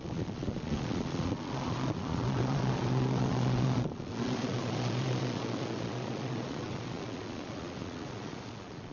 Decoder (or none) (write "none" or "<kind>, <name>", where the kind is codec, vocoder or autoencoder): vocoder, Vocos